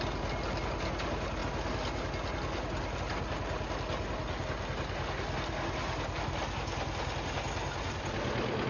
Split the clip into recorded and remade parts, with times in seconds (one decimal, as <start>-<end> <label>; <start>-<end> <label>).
0.0-8.7 recorded